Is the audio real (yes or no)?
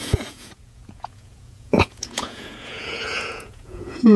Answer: no